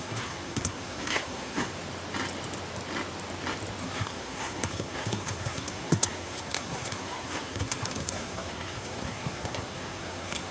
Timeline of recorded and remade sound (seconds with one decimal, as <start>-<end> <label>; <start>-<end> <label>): 0.0-1.7 remade; 1.7-3.8 recorded; 3.8-10.5 remade